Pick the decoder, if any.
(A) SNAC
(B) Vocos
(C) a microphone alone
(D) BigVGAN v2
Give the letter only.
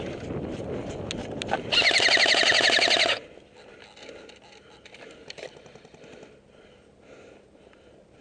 C